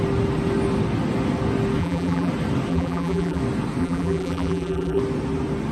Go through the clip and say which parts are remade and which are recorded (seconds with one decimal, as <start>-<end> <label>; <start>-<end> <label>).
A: 0.0-1.8 recorded; 1.8-2.3 remade; 2.3-2.7 recorded; 2.7-3.4 remade; 3.4-3.8 recorded; 3.8-5.0 remade; 5.0-5.7 recorded